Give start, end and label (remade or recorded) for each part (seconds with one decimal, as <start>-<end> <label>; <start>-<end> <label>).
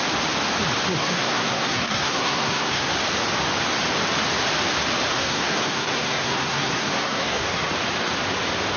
0.0-1.0 recorded; 1.0-2.9 remade; 2.9-5.1 recorded; 5.1-7.7 remade; 7.7-8.8 recorded